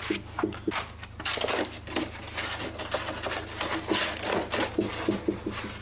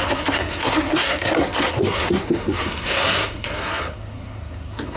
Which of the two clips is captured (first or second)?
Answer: first